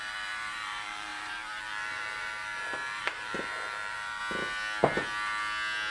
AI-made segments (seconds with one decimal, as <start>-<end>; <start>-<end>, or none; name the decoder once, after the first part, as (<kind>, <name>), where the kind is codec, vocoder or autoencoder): 0.0-4.2 (vocoder, BigVGAN v2)